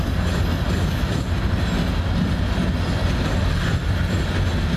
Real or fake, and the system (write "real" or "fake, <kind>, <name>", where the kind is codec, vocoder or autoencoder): real